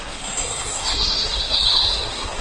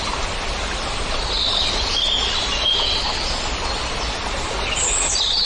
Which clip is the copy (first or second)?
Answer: first